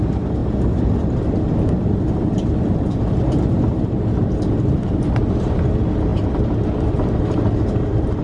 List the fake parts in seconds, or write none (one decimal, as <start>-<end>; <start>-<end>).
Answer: none